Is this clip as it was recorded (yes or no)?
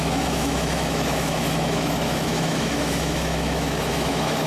no